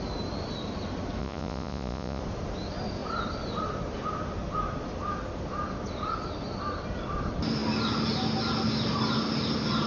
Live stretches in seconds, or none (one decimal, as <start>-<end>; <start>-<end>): 0.0-1.2; 2.2-9.9